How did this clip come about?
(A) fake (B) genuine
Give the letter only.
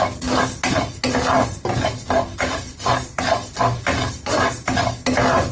B